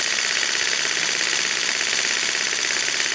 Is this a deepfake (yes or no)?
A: no